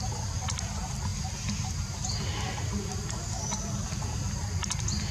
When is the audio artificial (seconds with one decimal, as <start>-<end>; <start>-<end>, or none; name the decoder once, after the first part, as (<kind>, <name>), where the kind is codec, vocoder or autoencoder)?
0.0-1.1 (vocoder, BigVGAN v2); 3.9-5.1